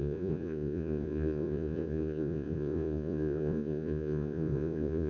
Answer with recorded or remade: remade